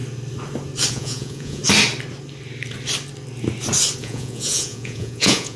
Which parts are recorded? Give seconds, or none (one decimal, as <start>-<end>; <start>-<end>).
0.0-0.9; 1.6-4.0